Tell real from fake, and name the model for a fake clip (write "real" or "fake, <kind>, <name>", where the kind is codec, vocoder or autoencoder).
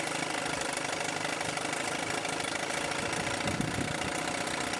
real